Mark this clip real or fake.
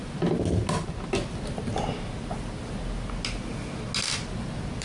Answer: real